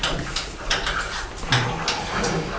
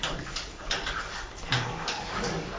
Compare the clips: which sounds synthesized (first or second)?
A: second